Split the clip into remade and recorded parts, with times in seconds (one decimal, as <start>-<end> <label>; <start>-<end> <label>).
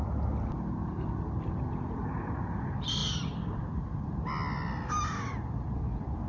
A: 0.0-6.3 remade